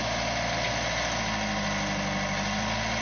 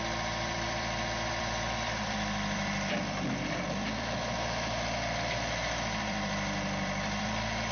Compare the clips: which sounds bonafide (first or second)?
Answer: first